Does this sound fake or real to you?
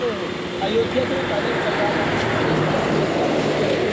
real